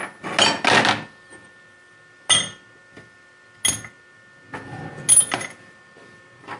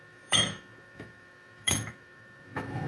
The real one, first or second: first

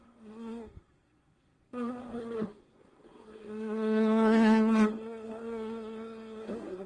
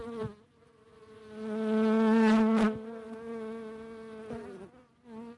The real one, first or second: second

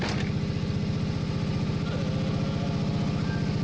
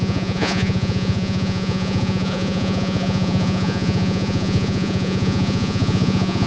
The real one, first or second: first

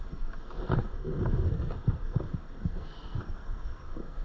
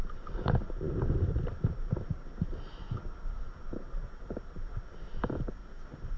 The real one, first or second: second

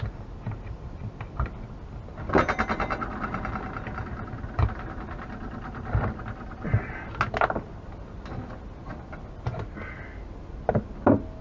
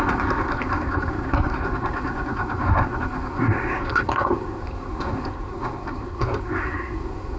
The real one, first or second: first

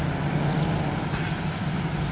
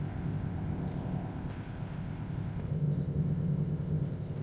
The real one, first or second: first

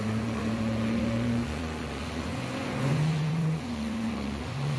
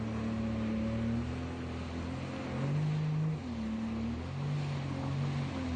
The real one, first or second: second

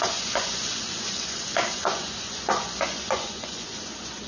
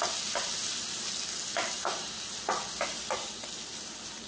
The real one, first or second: second